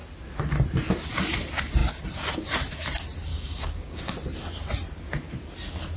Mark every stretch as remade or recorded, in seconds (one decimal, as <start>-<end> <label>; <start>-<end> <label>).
0.0-3.3 recorded; 3.3-4.1 remade; 4.1-6.0 recorded